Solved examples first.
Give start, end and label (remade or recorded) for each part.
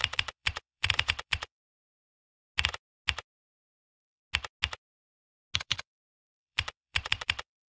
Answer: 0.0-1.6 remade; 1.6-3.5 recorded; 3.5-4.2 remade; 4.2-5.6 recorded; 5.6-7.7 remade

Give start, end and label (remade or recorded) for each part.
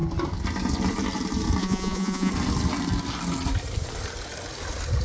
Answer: 0.0-1.6 recorded; 1.6-2.3 remade; 2.3-5.0 recorded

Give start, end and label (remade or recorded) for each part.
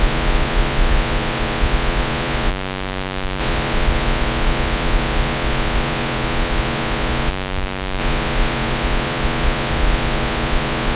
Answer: 0.0-2.5 remade; 2.5-3.4 recorded; 3.4-7.3 remade; 7.3-8.0 recorded; 8.0-10.9 remade